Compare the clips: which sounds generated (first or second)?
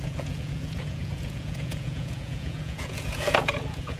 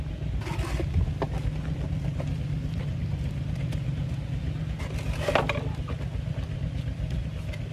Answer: first